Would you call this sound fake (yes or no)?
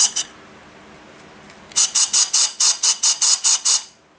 no